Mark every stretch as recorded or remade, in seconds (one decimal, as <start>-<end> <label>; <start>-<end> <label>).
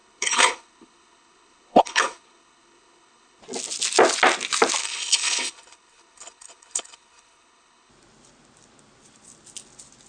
0.0-3.4 remade; 3.4-4.8 recorded; 4.8-7.9 remade; 7.9-10.1 recorded